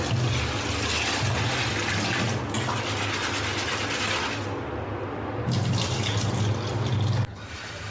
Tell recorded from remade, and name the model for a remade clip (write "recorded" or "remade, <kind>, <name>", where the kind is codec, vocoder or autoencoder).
recorded